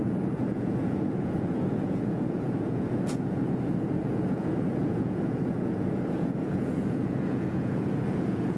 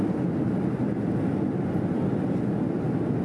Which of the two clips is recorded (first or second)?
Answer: second